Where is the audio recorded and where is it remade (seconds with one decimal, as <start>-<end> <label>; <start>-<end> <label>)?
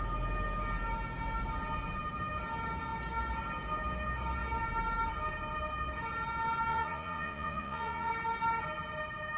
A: 0.0-6.7 recorded; 6.7-8.1 remade; 8.1-9.4 recorded